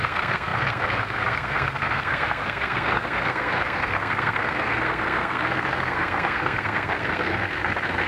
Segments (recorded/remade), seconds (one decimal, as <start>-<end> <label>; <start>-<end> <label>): 0.0-8.1 remade